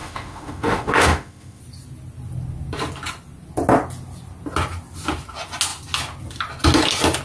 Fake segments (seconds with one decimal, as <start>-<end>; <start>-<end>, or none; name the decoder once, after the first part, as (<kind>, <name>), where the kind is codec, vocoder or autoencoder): 0.0-1.6 (autoencoder, DAC-VAE)